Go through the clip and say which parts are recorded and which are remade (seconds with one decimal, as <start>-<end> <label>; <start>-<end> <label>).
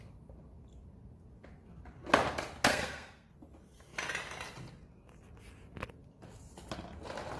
0.0-2.7 recorded; 2.7-3.3 remade; 3.3-7.4 recorded